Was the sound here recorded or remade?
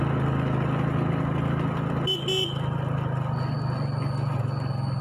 recorded